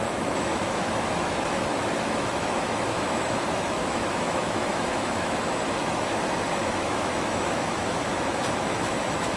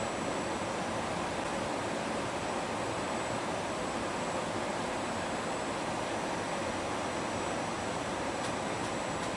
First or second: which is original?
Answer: second